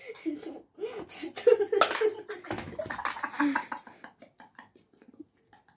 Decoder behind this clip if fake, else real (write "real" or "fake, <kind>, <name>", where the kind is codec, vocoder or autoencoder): real